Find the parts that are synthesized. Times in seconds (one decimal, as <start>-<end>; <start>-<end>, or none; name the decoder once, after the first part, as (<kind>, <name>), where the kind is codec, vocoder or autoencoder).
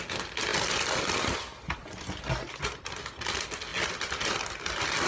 none